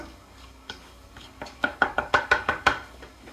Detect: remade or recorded remade